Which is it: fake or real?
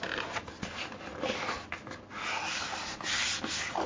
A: real